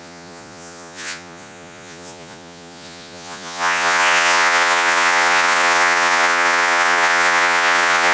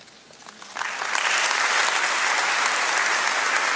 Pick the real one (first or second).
second